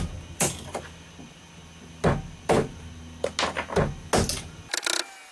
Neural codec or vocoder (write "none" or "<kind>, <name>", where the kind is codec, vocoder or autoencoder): none